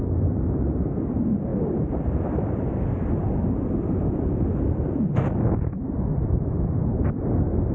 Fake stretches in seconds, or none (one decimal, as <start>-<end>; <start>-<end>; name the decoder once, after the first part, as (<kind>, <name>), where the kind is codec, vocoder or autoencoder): 1.5-4.5 (vocoder, BigVGAN v2); 6.1-6.8